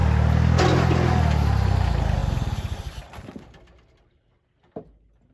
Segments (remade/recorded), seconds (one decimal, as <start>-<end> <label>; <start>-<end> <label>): 0.0-5.3 recorded